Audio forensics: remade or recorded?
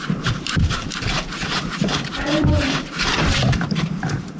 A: remade